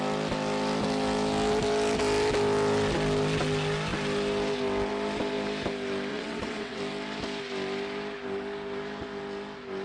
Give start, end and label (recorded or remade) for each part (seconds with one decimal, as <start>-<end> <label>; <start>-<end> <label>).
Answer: 0.0-6.1 recorded; 6.1-6.8 remade; 6.8-9.8 recorded